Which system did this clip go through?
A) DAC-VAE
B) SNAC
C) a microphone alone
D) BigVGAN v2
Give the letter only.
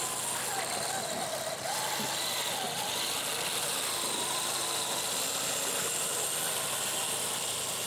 C